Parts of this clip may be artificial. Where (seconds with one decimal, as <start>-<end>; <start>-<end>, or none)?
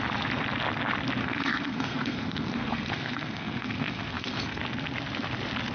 1.2-4.6